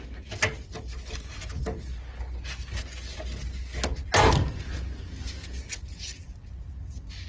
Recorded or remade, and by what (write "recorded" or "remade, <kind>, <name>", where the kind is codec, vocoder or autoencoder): recorded